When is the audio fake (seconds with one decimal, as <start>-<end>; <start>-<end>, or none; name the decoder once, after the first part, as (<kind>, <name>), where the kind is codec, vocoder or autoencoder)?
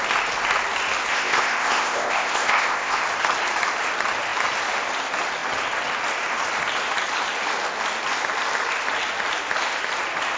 1.1-3.0 (codec, ZipCodec)